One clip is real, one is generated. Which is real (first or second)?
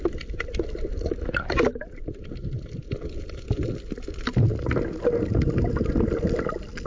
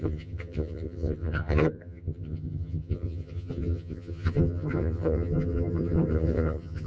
first